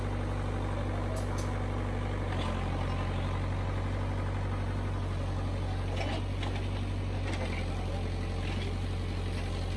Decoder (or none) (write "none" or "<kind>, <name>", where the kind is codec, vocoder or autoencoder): none